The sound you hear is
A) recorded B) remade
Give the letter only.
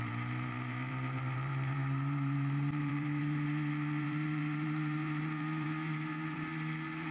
B